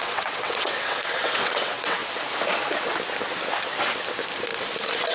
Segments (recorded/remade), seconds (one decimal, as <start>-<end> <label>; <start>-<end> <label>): 0.0-2.0 remade; 2.0-5.1 recorded